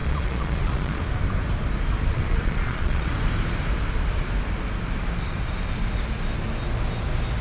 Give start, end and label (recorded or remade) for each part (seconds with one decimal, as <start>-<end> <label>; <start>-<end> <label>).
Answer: 0.0-1.0 remade; 1.0-2.1 recorded; 2.1-3.1 remade; 3.1-7.4 recorded